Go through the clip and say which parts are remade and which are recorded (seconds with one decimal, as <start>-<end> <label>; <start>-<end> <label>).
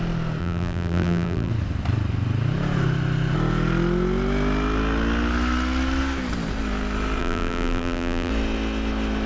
0.0-0.4 recorded; 0.4-1.5 remade; 1.5-7.2 recorded; 7.2-8.3 remade; 8.3-9.3 recorded